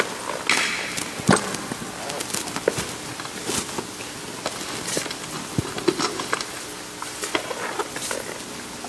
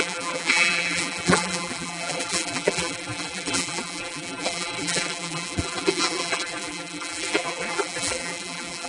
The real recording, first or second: first